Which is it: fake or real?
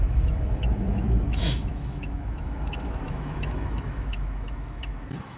fake